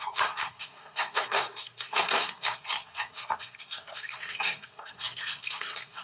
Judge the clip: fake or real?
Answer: fake